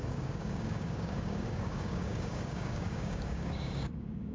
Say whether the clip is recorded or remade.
remade